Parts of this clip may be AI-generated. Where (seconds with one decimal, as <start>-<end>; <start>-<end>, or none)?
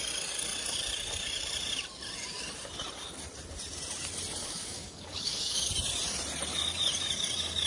4.4-5.7